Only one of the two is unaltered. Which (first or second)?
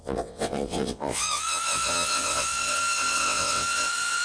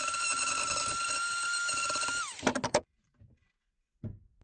second